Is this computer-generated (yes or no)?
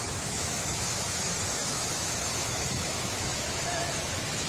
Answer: yes